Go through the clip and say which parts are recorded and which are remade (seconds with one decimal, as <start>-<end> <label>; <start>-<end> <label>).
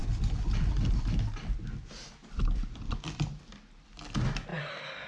0.0-5.1 recorded